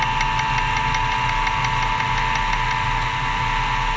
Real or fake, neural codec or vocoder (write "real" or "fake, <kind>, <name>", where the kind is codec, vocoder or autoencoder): real